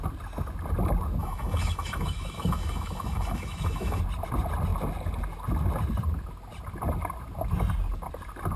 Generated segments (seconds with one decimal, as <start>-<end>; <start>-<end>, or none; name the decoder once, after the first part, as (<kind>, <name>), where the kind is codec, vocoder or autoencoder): 1.2-4.0 (autoencoder, DAC-VAE)